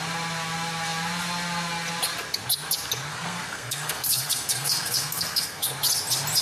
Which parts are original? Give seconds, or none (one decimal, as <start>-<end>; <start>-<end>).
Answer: 0.0-3.1; 5.7-6.4